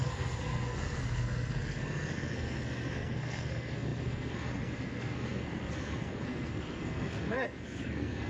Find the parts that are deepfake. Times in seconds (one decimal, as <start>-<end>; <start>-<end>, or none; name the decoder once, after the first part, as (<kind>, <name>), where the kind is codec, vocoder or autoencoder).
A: 0.0-8.3 (codec, SNAC)